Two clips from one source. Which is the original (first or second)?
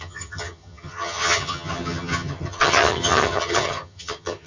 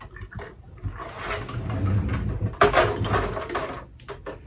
second